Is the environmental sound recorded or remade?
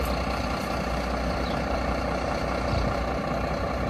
recorded